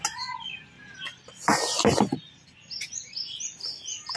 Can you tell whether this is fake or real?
real